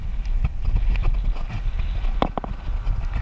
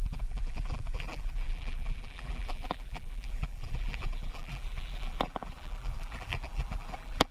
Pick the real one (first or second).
first